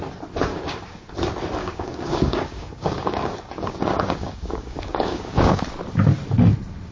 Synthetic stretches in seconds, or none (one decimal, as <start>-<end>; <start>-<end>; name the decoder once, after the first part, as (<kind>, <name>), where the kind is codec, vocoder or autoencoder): 0.5-1.1 (codec, DAC); 1.6-5.6